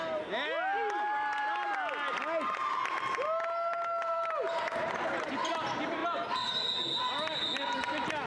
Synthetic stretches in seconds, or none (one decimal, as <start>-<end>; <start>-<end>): 6.0-6.8